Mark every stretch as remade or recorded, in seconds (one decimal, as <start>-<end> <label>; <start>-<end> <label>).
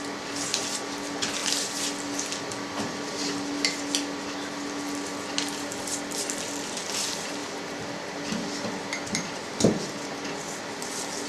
0.0-11.3 recorded